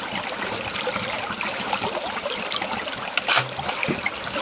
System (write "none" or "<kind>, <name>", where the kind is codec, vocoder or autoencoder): none